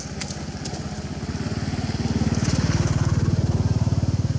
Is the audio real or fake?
fake